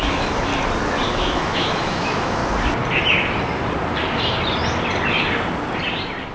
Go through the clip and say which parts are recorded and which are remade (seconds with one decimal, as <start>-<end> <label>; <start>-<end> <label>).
0.0-0.5 remade; 0.5-1.1 recorded; 1.1-2.4 remade; 2.4-6.3 recorded